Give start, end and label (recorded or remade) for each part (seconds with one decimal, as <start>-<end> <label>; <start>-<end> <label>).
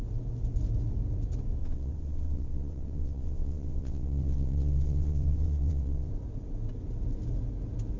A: 0.0-1.6 recorded; 1.6-6.1 remade; 6.1-8.0 recorded